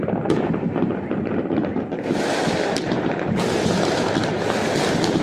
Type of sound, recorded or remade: remade